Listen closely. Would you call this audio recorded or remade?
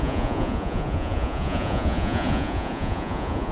remade